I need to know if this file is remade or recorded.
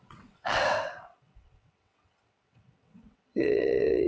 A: remade